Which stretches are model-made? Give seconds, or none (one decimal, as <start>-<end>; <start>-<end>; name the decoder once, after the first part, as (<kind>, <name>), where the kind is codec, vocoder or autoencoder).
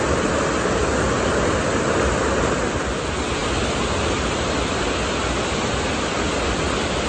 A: none